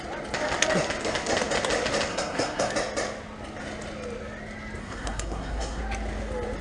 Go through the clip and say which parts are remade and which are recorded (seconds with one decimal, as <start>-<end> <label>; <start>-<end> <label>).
0.0-2.1 recorded; 2.1-2.7 remade; 2.7-4.8 recorded; 4.8-5.8 remade; 5.8-6.6 recorded